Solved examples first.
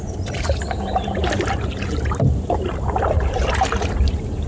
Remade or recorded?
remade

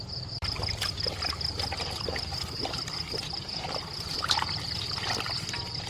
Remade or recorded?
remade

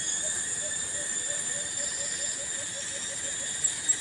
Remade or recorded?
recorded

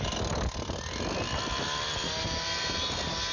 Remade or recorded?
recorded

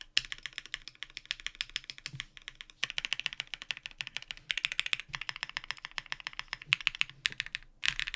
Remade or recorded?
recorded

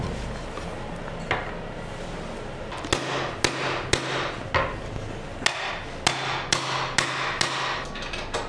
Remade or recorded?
recorded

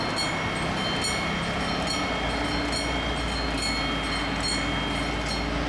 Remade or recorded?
recorded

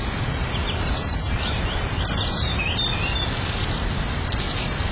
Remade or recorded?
remade